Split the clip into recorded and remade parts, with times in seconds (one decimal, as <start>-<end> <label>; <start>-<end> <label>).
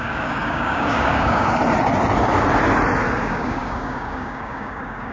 0.0-1.6 remade; 1.6-3.2 recorded; 3.2-5.1 remade